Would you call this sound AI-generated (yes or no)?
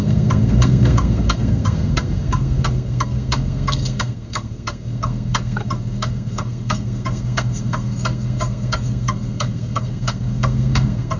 yes